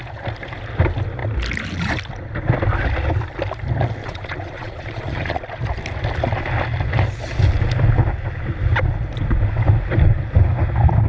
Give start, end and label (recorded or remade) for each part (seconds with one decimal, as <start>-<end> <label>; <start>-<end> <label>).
0.0-4.0 recorded; 4.0-5.4 remade; 5.4-11.1 recorded